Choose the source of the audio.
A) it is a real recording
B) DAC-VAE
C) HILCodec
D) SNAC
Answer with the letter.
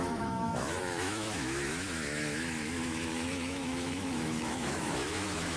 B